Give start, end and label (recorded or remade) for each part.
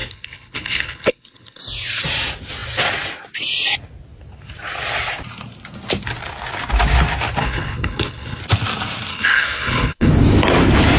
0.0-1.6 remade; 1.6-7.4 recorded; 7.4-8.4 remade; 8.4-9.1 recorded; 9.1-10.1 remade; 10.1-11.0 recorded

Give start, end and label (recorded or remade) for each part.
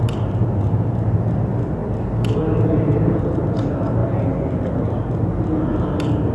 0.0-6.3 recorded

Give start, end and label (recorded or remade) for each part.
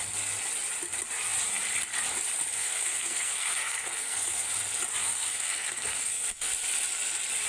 0.0-2.5 recorded; 2.5-4.5 remade; 4.5-5.0 recorded; 5.0-6.5 remade; 6.5-7.5 recorded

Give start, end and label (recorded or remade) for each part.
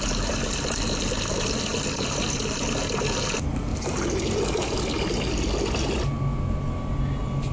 0.0-7.5 recorded